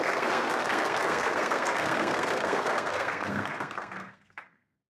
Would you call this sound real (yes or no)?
no